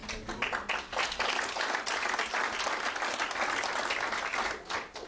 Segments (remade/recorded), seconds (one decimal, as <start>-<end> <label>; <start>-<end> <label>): 0.0-5.1 recorded